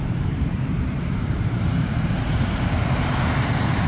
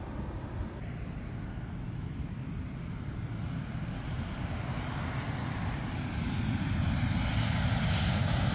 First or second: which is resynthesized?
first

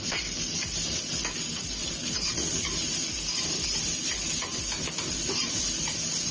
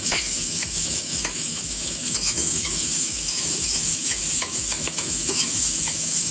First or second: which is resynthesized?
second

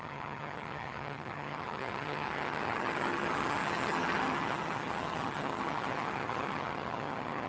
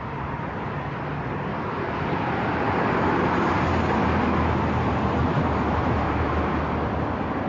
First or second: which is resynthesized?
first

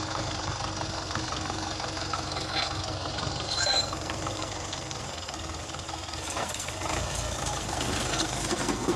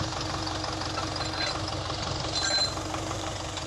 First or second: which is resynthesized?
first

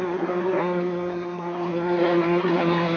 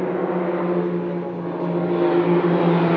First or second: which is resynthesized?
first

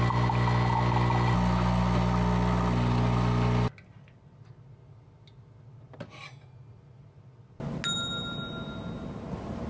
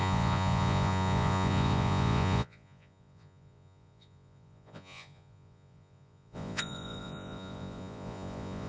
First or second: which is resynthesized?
second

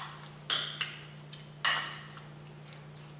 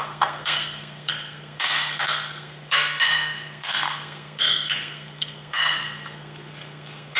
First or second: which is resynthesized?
second